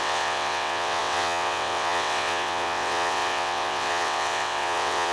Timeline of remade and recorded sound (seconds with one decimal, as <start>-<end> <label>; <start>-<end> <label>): 0.0-5.1 remade